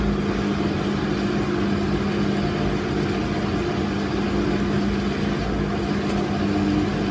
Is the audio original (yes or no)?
yes